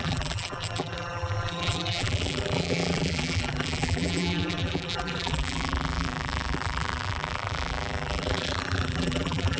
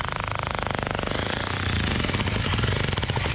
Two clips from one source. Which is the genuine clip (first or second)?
second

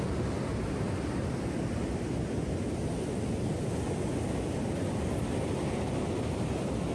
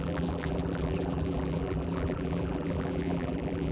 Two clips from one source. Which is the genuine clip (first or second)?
first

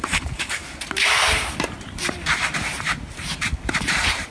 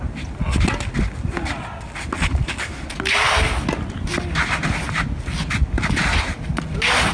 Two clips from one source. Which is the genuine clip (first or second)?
second